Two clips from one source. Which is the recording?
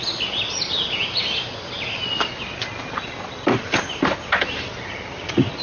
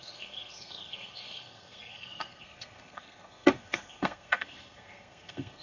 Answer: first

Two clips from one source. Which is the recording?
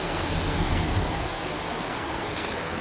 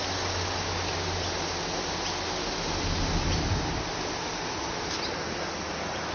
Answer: second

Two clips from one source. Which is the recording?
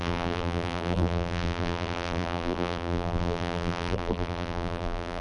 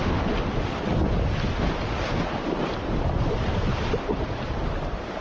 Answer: second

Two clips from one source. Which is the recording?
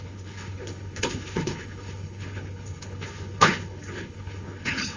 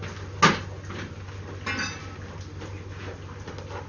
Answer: second